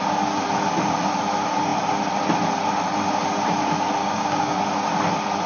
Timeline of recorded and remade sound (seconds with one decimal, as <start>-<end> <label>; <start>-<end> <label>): 0.0-4.0 recorded; 4.0-4.6 remade; 4.6-5.5 recorded